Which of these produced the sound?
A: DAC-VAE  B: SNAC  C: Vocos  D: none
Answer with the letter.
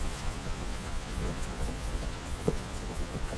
C